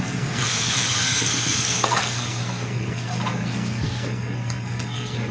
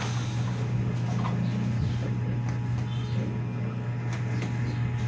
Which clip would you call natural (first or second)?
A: second